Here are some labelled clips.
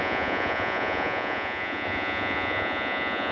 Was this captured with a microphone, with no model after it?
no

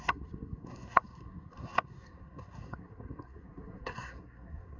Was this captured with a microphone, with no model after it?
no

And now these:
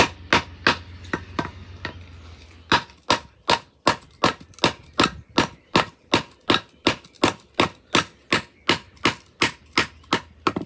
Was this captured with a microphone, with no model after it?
yes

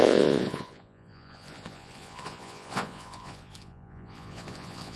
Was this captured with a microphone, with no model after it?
no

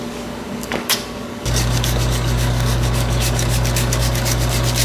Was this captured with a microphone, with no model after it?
no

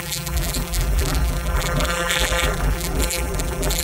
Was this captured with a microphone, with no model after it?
no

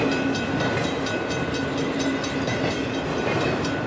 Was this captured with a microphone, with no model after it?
yes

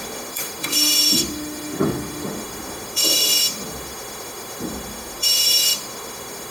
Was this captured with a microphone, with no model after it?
no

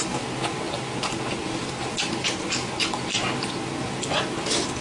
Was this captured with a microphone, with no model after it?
yes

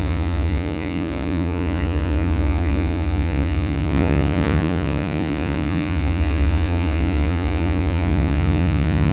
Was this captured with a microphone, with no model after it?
no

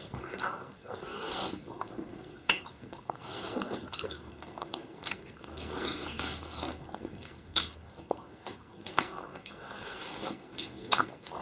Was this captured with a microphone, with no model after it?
no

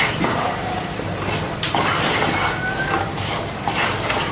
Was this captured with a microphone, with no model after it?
no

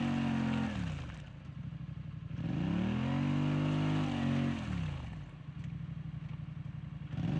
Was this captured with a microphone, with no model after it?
yes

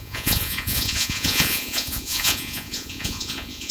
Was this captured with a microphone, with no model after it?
no